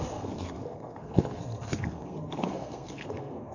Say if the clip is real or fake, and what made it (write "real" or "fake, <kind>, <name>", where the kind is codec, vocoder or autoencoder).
fake, codec, SNAC